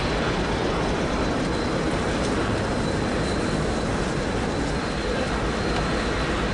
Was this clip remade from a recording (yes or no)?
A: no